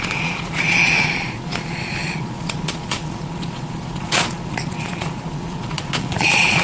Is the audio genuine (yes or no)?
no